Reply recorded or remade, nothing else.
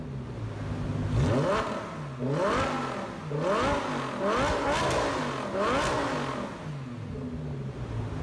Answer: recorded